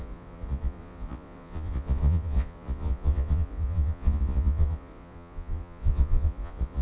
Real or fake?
fake